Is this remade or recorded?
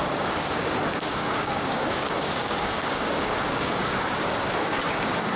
remade